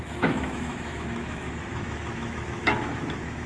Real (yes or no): no